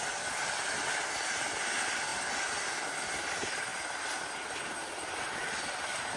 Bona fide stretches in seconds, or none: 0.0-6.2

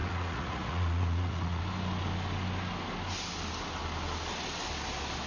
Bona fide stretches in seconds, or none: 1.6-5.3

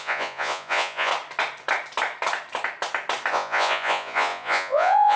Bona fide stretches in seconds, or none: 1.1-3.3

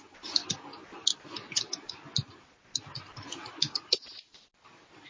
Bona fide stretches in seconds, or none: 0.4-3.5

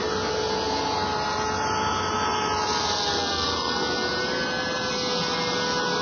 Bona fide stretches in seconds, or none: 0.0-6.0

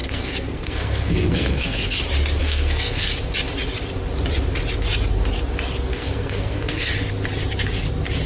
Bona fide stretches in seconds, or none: 2.0-2.4; 3.1-5.9; 6.9-8.3